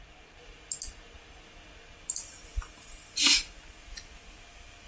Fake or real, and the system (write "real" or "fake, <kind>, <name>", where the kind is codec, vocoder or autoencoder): real